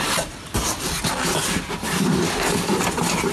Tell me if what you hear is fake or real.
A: real